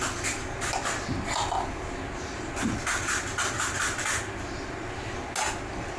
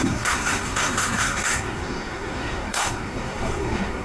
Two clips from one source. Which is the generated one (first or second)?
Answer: second